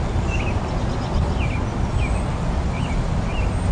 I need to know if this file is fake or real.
real